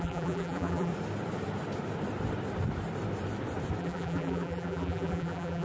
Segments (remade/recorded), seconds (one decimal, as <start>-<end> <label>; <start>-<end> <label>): 0.0-0.9 remade; 0.9-3.8 recorded; 3.8-5.6 remade